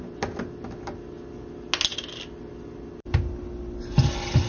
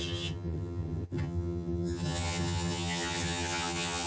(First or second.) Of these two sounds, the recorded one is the first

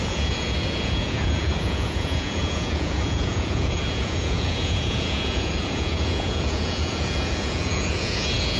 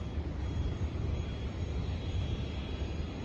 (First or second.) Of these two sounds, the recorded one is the second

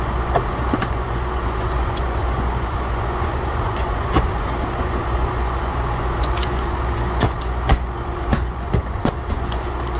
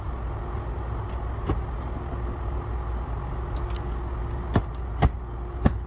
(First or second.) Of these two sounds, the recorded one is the second